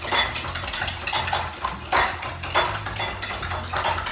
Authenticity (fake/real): real